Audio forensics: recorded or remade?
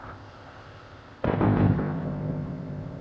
remade